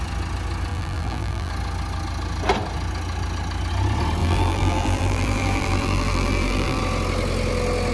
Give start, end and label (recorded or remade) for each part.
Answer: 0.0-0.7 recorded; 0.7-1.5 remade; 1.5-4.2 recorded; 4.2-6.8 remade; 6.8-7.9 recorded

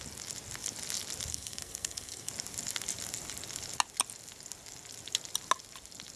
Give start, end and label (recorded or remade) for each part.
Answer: 0.0-1.3 recorded; 1.3-2.3 remade; 2.3-6.2 recorded

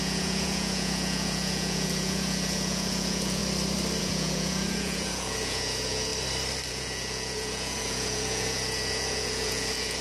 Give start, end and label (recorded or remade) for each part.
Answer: 0.0-3.4 remade; 3.4-4.0 recorded; 4.0-6.1 remade; 6.1-6.7 recorded; 6.7-10.0 remade

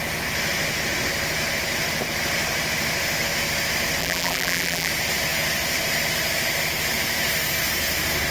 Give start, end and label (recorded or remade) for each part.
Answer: 0.0-4.0 recorded; 4.0-4.9 remade; 4.9-8.3 recorded

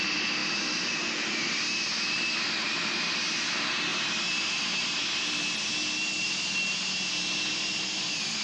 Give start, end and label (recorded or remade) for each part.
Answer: 0.0-8.4 recorded

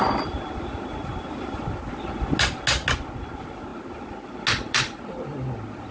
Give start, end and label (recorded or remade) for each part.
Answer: 0.0-5.9 recorded